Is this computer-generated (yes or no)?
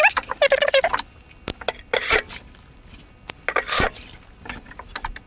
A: no